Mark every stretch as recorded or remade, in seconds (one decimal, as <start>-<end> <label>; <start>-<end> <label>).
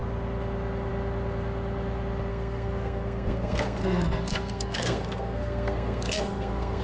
0.0-2.3 recorded; 2.3-6.8 remade